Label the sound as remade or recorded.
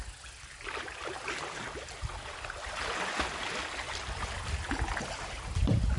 recorded